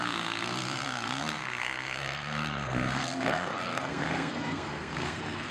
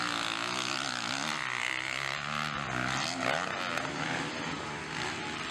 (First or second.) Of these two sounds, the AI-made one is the first